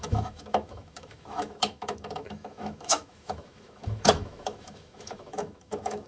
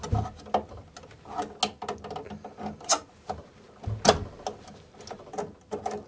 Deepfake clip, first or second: first